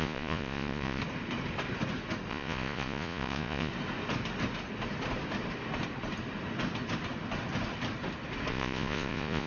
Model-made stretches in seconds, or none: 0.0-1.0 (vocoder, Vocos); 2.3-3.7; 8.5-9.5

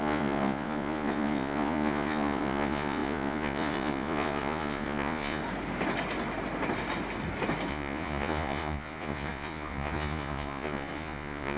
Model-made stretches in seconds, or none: 0.0-5.4 (vocoder, Vocos); 7.7-11.6